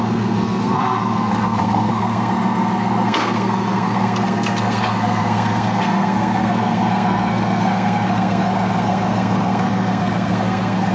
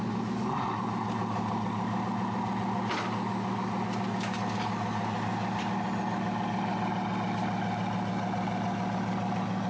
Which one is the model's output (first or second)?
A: first